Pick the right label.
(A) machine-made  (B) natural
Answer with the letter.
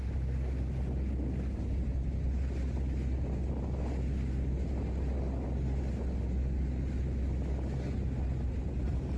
B